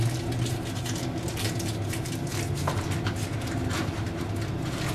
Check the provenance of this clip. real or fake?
real